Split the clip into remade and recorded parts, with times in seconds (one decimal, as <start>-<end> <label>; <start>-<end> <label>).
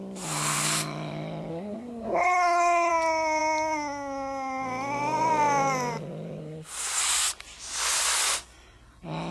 0.0-1.5 recorded; 1.5-2.9 remade; 2.9-6.4 recorded; 6.4-7.0 remade; 7.0-9.3 recorded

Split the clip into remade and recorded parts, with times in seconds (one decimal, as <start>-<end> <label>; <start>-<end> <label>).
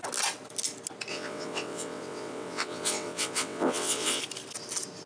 0.0-1.1 recorded; 1.1-4.2 remade; 4.2-5.1 recorded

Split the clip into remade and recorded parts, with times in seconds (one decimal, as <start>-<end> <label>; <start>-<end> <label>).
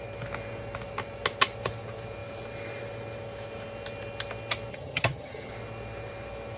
0.0-4.7 recorded; 4.7-5.5 remade; 5.5-6.6 recorded